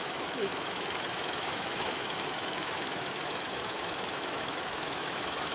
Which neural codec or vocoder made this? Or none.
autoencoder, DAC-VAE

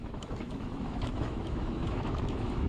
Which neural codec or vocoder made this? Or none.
autoencoder, DAC-VAE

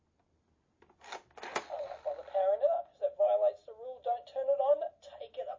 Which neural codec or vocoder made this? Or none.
none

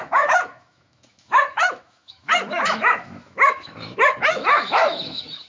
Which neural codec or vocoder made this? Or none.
autoencoder, DAC-VAE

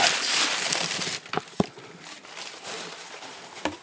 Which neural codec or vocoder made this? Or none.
none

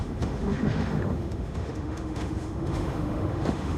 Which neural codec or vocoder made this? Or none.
autoencoder, DAC-VAE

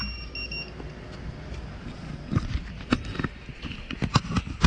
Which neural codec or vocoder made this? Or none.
none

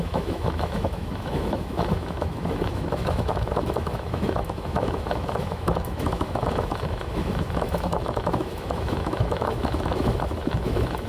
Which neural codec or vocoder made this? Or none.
autoencoder, DAC-VAE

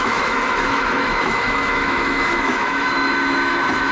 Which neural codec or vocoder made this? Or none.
autoencoder, DAC-VAE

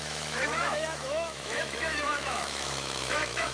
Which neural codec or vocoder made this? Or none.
autoencoder, DAC-VAE